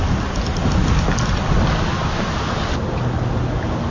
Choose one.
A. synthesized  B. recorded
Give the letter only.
B